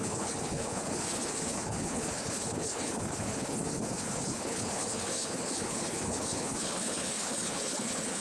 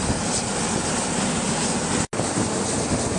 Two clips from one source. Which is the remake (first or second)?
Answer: first